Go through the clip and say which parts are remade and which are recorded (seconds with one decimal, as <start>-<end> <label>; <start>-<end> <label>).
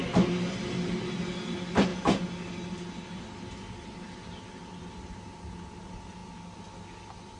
0.0-7.4 recorded